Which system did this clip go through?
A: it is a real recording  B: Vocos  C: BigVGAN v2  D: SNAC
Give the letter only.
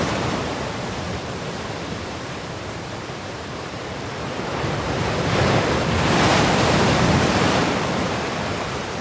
C